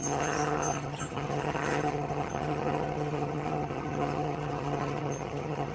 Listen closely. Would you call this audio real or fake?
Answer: fake